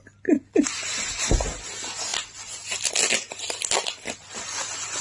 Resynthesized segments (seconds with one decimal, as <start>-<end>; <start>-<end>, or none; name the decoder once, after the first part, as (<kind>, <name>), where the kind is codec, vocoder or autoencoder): none